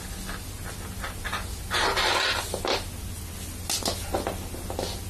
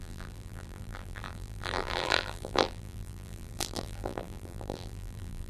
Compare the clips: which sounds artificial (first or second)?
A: second